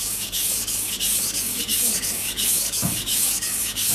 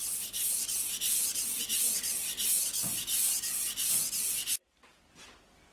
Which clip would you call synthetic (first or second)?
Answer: first